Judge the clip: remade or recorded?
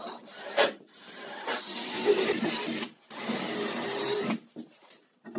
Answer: remade